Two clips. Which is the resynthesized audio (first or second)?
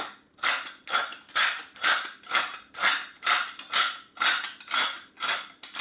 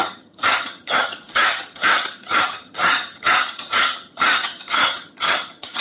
second